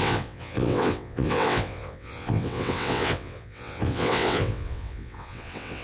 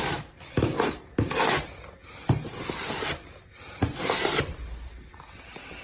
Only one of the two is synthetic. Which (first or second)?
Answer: first